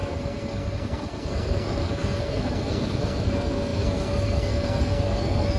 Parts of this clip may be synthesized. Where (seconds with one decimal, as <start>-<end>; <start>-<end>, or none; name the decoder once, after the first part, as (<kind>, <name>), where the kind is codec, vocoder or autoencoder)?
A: 0.0-5.6 (codec, SNAC)